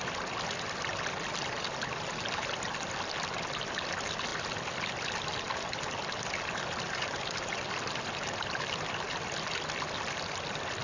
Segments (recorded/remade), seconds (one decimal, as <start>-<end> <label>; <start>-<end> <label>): 0.0-10.8 recorded